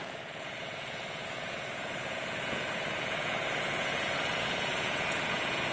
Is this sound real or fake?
fake